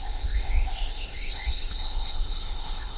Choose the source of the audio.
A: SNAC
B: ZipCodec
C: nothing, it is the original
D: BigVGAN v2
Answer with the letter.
B